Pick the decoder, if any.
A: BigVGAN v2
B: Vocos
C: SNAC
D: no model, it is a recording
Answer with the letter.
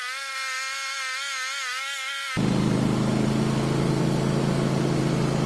D